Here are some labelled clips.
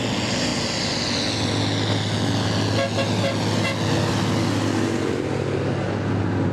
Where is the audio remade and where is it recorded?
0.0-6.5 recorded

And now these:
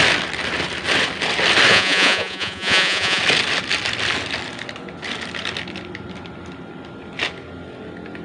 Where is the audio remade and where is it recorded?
0.0-1.7 recorded; 1.7-3.2 remade; 3.2-8.2 recorded

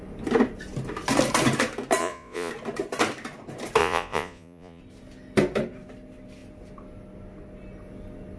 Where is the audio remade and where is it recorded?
0.0-2.0 recorded; 2.0-2.5 remade; 2.5-3.8 recorded; 3.8-4.8 remade; 4.8-8.4 recorded

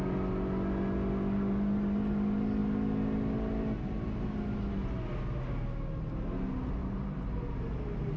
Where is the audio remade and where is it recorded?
0.0-6.8 recorded; 6.8-7.3 remade; 7.3-8.2 recorded

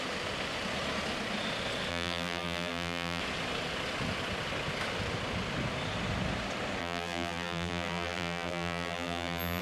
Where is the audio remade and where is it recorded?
0.0-1.9 recorded; 1.9-3.2 remade; 3.2-6.8 recorded; 6.8-9.6 remade